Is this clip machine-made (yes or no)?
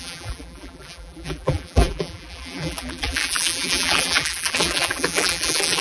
yes